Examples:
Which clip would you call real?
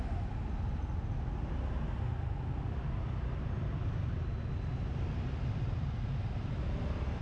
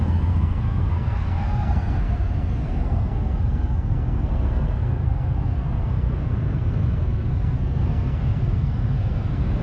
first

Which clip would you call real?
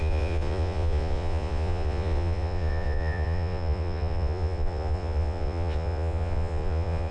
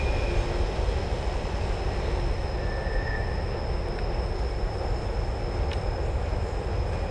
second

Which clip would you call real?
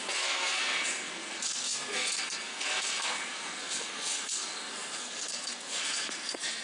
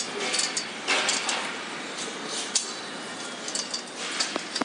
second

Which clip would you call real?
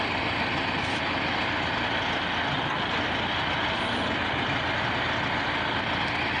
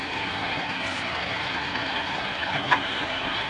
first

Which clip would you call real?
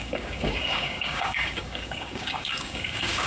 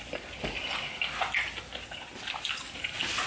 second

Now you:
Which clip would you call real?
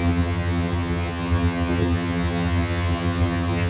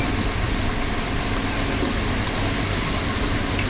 second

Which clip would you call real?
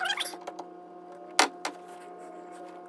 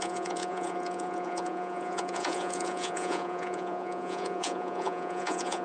first